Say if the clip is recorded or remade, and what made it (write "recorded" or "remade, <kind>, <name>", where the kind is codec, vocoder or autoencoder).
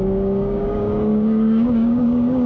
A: remade, codec, DAC